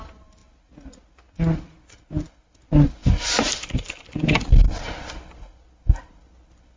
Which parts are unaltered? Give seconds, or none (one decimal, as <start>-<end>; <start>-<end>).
0.0-6.8

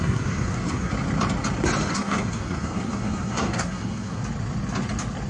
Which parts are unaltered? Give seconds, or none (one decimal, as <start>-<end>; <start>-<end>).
0.9-1.9; 4.2-5.3

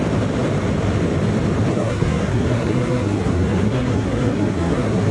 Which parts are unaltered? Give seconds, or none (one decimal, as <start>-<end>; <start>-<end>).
0.0-1.7

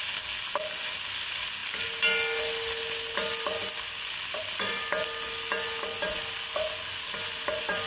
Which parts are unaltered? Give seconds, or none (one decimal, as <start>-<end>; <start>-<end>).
0.0-7.9